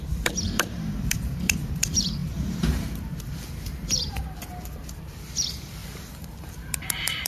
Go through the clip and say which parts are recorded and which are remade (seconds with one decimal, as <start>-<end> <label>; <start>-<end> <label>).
0.0-7.3 remade